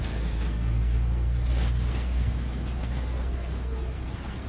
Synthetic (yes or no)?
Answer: yes